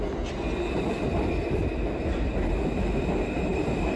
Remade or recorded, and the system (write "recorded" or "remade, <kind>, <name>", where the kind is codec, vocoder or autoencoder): recorded